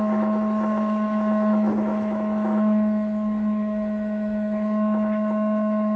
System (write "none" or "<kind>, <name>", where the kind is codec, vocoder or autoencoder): autoencoder, DAC-VAE